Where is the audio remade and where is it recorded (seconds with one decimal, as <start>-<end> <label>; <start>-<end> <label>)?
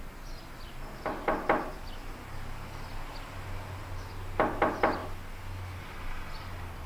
0.0-6.9 recorded